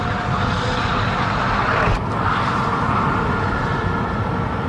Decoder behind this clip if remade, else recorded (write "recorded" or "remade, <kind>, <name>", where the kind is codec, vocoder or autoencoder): recorded